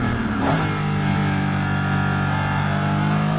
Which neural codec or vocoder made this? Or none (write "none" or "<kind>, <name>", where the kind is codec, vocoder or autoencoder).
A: none